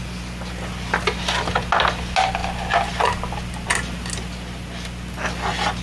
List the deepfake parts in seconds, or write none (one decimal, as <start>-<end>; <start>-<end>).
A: none